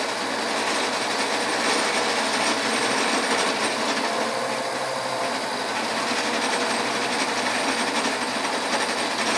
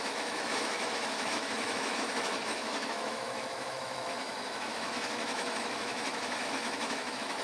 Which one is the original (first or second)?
first